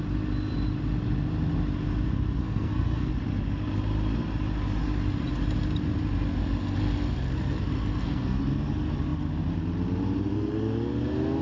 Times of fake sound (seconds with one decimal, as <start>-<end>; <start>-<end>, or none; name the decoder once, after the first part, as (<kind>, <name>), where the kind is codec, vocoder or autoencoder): 2.4-3.1 (codec, SNAC); 7.9-8.4